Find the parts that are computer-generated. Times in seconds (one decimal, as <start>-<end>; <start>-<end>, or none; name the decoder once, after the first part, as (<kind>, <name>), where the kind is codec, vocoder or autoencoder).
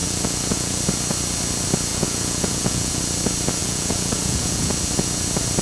0.0-0.8 (vocoder, Vocos); 1.9-3.0; 3.6-4.7